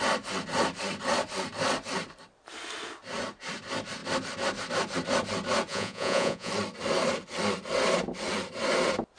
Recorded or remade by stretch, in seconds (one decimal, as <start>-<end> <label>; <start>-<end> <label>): 0.0-5.7 recorded; 5.7-6.5 remade; 6.5-9.2 recorded